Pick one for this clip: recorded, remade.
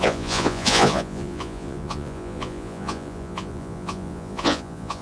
remade